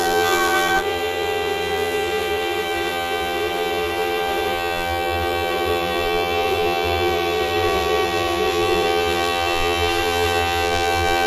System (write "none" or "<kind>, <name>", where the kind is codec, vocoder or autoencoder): vocoder, BigVGAN v2